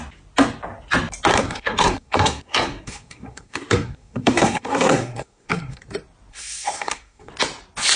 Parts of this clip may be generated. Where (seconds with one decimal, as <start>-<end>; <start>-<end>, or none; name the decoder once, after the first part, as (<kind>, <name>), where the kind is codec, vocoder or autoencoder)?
1.3-5.8 (codec, SNAC); 6.3-7.3